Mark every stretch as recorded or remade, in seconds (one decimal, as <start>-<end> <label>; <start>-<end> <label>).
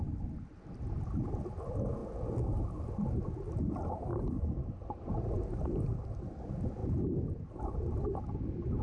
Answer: 0.0-8.8 recorded